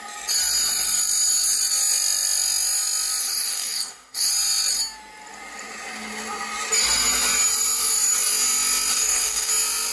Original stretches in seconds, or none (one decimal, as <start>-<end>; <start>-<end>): 0.0-3.2; 4.3-8.9; 9.5-9.9